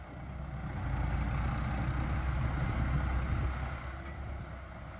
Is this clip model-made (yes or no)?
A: no